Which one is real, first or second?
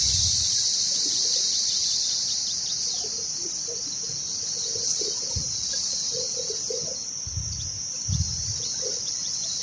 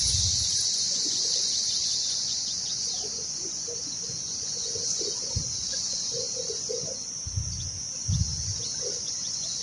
first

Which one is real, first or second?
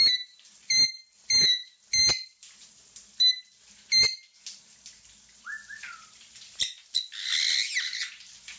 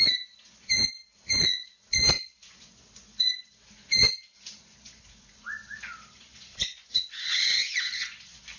first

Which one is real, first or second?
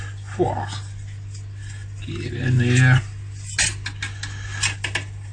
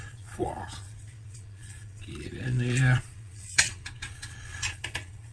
first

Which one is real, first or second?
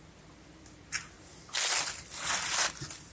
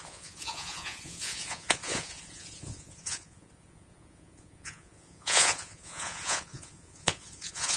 first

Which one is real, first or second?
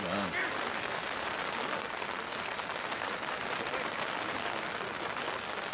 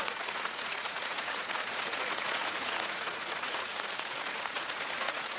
first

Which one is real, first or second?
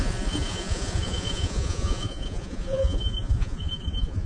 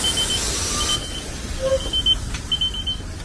second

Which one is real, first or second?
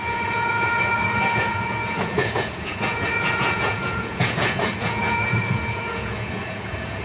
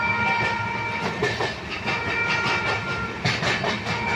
second